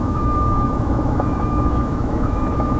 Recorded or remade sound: remade